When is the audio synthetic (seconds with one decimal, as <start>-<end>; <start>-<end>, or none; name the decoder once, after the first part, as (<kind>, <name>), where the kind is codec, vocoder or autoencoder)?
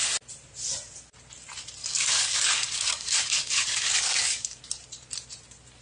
1.8-4.6 (codec, DAC)